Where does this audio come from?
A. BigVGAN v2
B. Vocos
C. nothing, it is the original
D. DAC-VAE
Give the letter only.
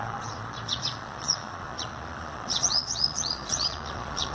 B